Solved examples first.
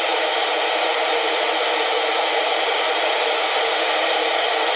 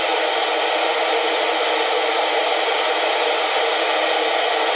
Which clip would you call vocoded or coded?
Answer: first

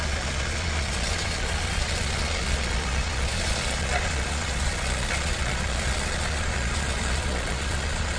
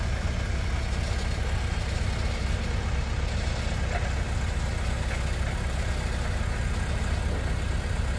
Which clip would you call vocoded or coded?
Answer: first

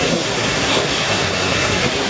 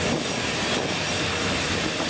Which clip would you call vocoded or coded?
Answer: first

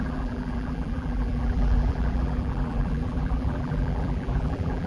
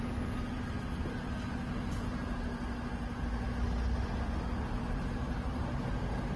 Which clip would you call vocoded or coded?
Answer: first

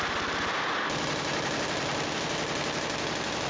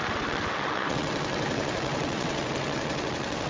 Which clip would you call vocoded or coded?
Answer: second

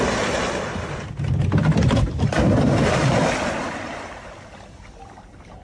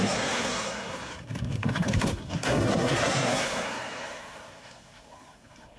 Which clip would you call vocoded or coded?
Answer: second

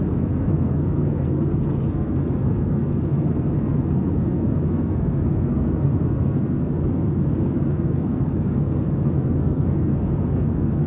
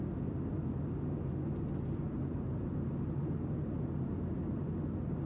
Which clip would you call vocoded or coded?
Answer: first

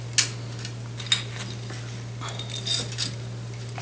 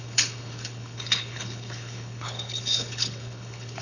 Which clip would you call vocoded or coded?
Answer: second